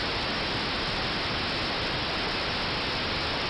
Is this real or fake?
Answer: real